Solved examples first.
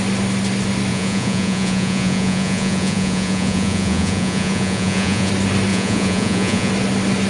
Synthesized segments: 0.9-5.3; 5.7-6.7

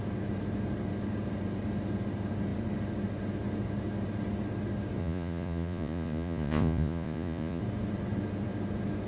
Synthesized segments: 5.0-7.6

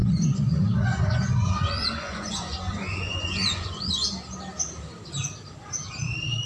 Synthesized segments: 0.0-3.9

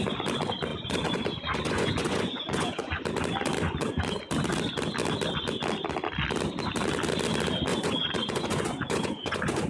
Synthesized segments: 0.7-3.0; 7.7-9.7

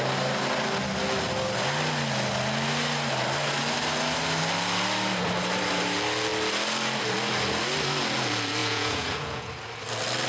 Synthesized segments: 8.6-9.5

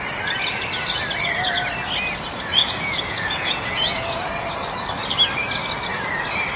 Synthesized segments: 2.5-4.3

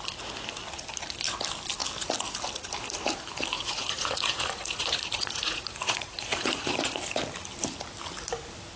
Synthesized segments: 3.5-7.0